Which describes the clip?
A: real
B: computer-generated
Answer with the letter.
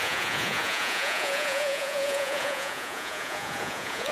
B